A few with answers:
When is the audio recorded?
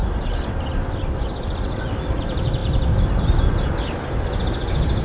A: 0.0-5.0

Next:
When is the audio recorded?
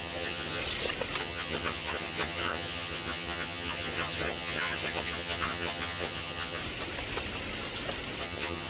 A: 0.6-1.2; 6.6-8.2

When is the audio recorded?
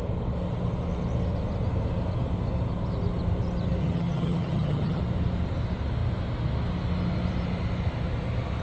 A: 0.0-3.8; 5.0-8.6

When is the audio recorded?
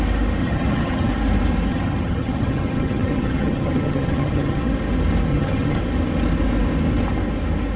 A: 0.0-0.4; 1.1-1.7; 4.7-5.3; 5.8-7.8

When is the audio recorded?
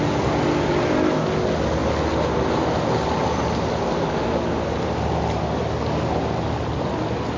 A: 0.0-7.4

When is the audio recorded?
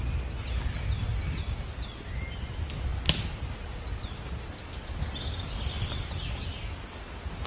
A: 0.0-7.5